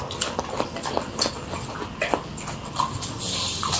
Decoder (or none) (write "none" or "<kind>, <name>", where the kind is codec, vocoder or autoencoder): none